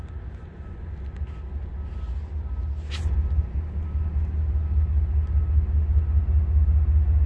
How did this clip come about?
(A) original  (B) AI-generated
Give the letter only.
A